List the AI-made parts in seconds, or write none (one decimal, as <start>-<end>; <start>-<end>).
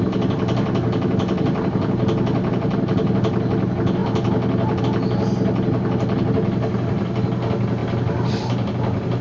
none